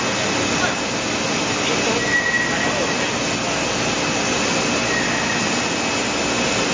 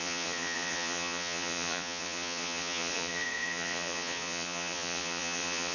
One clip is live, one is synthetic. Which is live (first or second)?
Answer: first